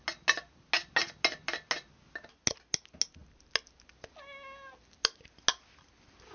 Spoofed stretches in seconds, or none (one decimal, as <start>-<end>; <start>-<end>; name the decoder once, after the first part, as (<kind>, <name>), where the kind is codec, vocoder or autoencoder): none